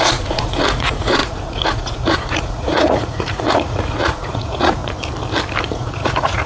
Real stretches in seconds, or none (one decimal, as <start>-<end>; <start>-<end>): 4.8-5.6